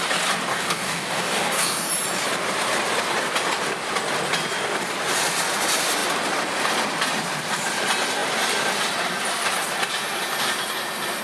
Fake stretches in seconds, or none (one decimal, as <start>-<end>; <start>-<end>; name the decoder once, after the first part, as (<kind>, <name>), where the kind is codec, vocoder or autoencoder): 0.5-1.9 (codec, DAC)